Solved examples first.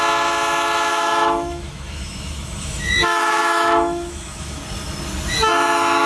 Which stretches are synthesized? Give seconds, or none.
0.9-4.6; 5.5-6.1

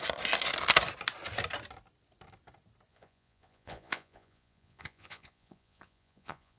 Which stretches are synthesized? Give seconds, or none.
2.9-6.6

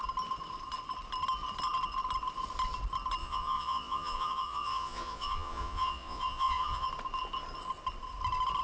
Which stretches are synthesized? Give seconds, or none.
3.2-6.9

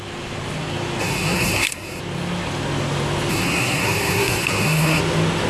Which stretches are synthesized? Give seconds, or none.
1.0-2.0; 3.3-5.0